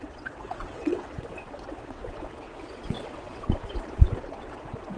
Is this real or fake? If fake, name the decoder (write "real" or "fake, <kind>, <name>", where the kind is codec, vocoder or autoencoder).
fake, vocoder, WaveNeXt